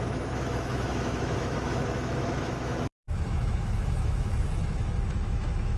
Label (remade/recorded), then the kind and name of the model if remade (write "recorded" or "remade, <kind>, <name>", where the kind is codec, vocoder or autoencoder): remade, autoencoder, DAC-VAE